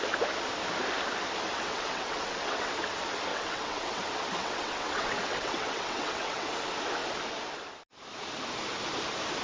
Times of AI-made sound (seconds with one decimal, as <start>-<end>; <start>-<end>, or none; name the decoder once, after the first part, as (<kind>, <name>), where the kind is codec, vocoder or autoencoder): 1.5-2.7 (vocoder, WaveNeXt); 3.3-4.0; 4.4-6.5